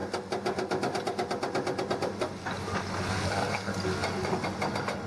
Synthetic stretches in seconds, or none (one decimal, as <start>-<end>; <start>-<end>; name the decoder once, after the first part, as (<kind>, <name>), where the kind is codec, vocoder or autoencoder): 3.1-3.7 (codec, SNAC)